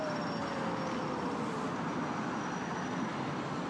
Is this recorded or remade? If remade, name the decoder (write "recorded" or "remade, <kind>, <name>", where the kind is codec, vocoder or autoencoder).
recorded